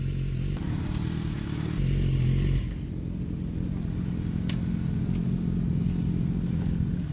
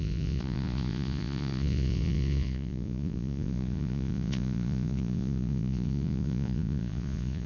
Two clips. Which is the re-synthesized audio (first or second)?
second